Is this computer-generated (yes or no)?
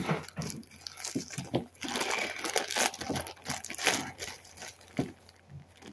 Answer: no